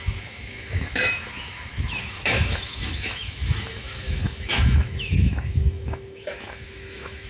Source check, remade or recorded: remade